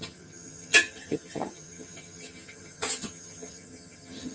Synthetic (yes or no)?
yes